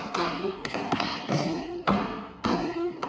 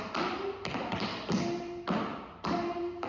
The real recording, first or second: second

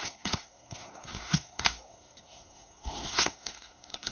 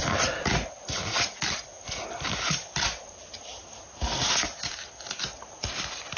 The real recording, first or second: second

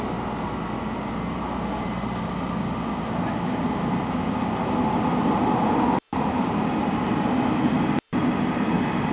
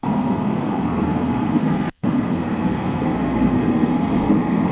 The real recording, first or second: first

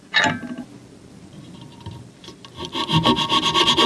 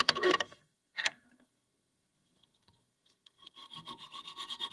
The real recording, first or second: first